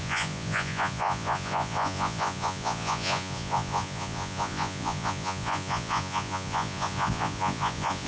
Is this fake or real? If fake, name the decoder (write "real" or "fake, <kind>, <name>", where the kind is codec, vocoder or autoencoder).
fake, vocoder, Vocos